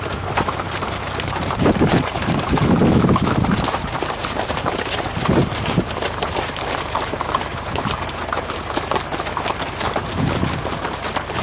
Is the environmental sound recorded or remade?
remade